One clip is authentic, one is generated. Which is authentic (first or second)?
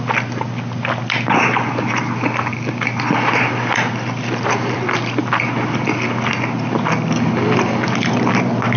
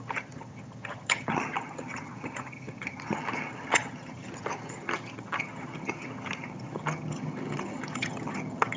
first